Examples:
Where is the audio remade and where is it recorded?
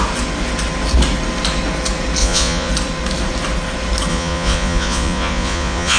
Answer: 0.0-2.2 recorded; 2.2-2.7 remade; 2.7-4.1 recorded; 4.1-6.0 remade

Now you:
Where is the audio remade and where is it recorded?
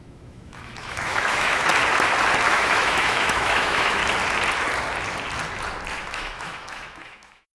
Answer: 0.0-1.7 remade; 1.7-2.5 recorded; 2.5-4.0 remade; 4.0-6.1 recorded; 6.1-7.5 remade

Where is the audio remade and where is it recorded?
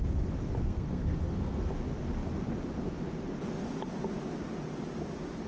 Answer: 0.0-0.6 recorded; 0.6-1.6 remade; 1.6-5.5 recorded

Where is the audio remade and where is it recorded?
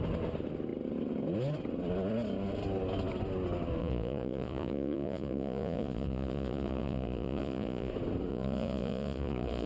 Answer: 0.0-3.8 recorded; 3.8-7.9 remade; 7.9-8.3 recorded; 8.3-9.7 remade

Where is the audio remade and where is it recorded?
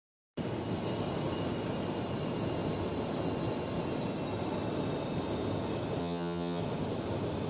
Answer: 0.0-6.0 recorded; 6.0-6.6 remade; 6.6-7.5 recorded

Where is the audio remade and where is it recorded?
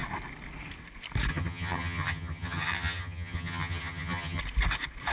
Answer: 0.0-1.3 recorded; 1.3-4.4 remade; 4.4-5.1 recorded